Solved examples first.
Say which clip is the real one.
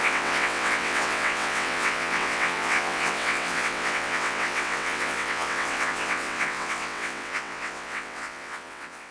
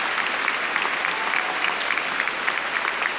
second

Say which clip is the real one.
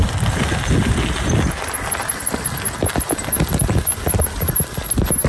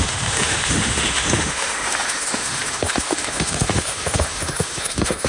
first